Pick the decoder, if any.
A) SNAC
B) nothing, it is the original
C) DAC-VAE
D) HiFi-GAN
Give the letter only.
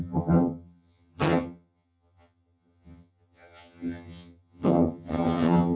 D